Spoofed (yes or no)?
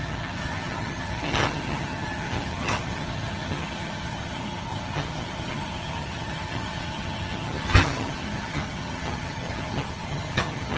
yes